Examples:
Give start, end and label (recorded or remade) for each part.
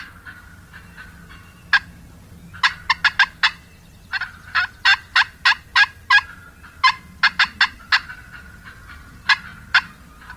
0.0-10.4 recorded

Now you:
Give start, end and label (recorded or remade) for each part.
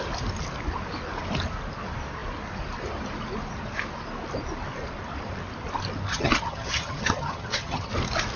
0.0-6.1 recorded; 6.1-7.9 remade; 7.9-8.4 recorded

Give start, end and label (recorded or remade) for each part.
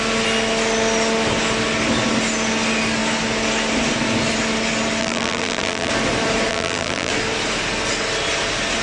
0.0-5.0 recorded; 5.0-5.9 remade; 5.9-6.5 recorded; 6.5-7.1 remade; 7.1-8.8 recorded